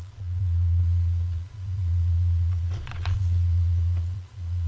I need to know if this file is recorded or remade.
remade